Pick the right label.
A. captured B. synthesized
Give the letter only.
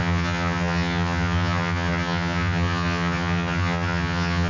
B